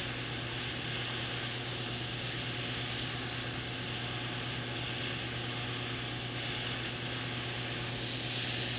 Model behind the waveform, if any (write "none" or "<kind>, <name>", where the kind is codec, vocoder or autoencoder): none